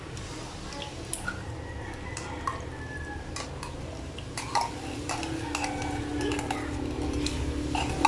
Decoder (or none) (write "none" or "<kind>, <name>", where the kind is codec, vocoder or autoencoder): none